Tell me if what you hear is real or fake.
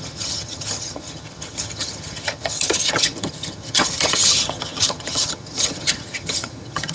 fake